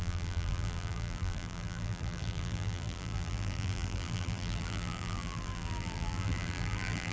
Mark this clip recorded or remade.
remade